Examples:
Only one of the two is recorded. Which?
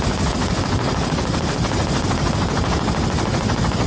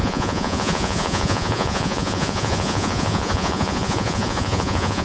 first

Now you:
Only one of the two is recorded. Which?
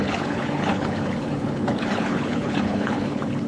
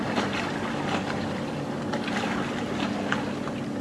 second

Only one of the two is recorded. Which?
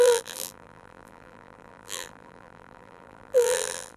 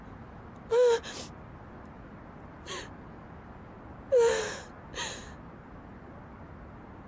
second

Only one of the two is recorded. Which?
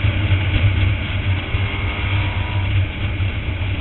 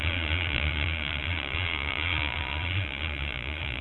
first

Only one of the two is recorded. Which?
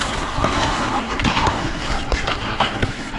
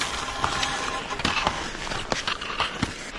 second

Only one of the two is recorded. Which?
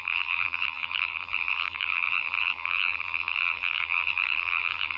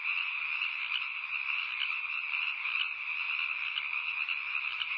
second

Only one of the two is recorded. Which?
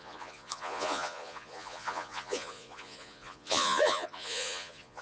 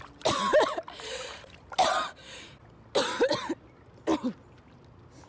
second